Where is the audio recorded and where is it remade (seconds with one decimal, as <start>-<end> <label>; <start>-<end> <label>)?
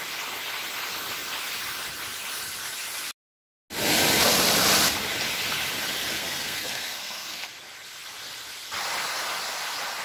0.0-6.2 recorded; 6.2-7.5 remade; 7.5-10.0 recorded